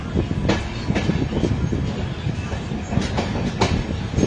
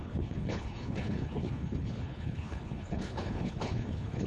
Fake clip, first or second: second